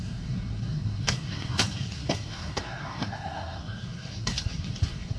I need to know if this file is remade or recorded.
remade